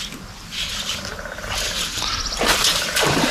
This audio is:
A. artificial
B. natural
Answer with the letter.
B